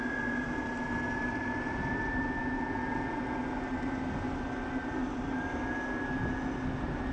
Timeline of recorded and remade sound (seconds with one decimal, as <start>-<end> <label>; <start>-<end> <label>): 0.0-1.4 recorded; 1.4-2.4 remade; 2.4-7.1 recorded

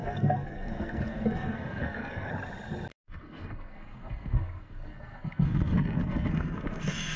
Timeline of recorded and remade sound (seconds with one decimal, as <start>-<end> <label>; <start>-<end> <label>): 0.0-2.3 remade; 2.3-2.9 recorded; 2.9-7.2 remade

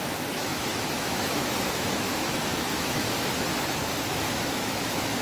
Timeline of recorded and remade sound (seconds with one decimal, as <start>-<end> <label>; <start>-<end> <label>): 0.0-5.2 remade

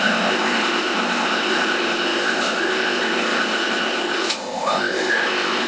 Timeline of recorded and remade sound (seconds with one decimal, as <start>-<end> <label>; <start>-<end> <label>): 0.0-5.7 remade

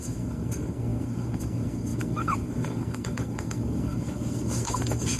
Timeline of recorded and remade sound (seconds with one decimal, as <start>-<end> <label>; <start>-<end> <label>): 0.0-5.2 remade

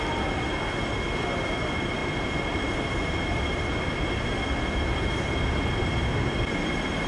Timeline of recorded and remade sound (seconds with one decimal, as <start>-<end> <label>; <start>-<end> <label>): 0.0-7.1 recorded